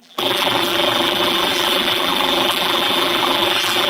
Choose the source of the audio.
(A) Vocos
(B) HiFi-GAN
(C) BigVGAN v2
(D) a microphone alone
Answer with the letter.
C